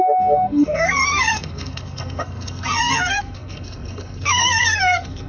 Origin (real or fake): fake